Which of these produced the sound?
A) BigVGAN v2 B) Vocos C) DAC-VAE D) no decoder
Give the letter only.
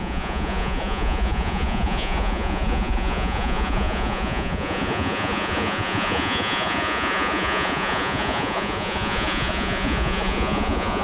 B